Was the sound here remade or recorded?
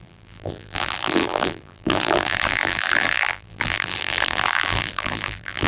remade